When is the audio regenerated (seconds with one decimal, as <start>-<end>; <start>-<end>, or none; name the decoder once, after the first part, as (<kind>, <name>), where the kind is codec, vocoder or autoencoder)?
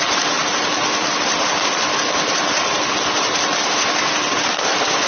none